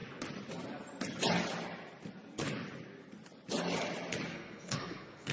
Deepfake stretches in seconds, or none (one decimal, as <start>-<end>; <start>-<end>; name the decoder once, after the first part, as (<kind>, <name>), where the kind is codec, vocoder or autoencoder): 4.3-5.3 (codec, SNAC)